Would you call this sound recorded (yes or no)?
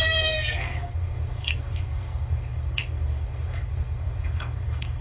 no